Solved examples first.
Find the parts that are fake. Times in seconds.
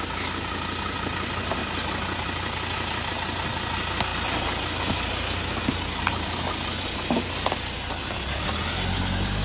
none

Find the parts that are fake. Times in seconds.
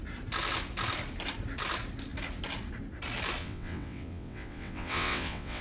3.4-5.6 (vocoder, WaveNeXt)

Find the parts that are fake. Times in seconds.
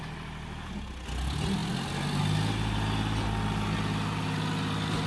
none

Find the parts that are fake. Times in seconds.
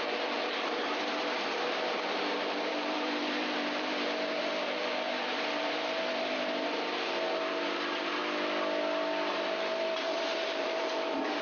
0.0-8.2 (vocoder, BigVGAN v2); 9.3-11.4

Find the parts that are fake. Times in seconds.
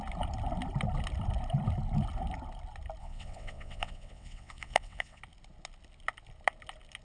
3.0-5.2 (vocoder, WaveNeXt)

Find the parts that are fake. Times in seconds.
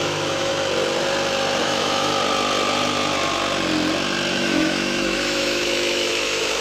0.0-0.5 (autoencoder, DAC-VAE); 1.6-2.1; 4.3-6.6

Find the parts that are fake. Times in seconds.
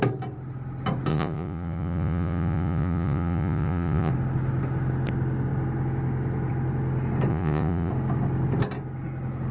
1.1-4.1 (vocoder, Vocos); 7.3-7.9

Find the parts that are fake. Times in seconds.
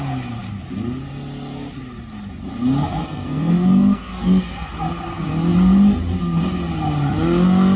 3.0-4.7 (codec, SNAC)